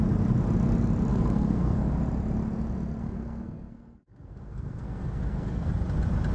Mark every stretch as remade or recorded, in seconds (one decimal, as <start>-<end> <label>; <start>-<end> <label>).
0.0-1.1 recorded; 1.1-1.9 remade; 1.9-3.0 recorded; 3.0-5.7 remade; 5.7-6.3 recorded